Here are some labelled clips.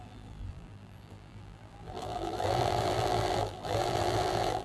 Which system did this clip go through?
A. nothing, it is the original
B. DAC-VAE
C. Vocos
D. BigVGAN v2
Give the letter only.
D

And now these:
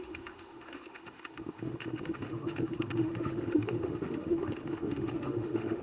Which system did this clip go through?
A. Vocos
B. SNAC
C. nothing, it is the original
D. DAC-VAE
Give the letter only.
D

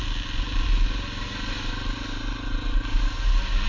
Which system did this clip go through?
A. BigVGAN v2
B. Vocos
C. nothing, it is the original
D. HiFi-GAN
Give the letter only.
C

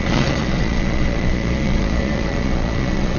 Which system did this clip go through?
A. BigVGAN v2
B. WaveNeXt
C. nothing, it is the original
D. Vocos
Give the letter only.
D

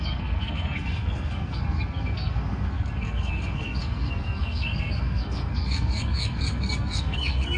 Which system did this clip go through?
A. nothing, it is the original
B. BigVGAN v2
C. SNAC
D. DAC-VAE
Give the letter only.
C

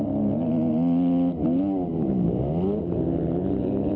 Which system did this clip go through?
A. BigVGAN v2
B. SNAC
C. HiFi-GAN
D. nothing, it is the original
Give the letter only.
D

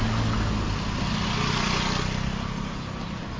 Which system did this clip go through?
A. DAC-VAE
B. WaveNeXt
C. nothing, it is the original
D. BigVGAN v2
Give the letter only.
C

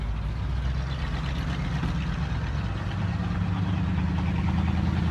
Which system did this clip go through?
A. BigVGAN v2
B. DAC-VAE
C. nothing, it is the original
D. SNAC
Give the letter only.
C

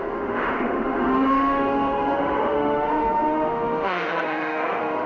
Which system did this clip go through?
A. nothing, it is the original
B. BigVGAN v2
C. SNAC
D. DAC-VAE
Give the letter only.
D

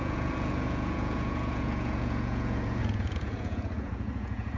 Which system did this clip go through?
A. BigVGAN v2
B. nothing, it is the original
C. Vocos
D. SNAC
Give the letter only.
C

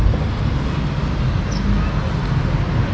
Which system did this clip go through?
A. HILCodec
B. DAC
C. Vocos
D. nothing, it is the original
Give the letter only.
D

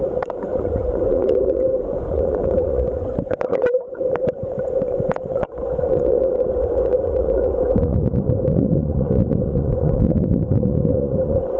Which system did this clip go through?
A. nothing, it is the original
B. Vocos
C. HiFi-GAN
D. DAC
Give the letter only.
B